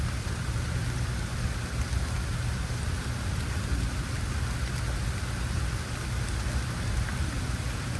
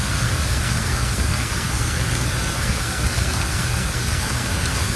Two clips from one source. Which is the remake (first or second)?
second